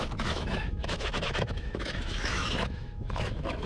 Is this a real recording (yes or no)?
no